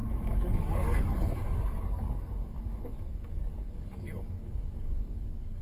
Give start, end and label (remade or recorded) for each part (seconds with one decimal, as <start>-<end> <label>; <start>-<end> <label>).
0.0-5.6 remade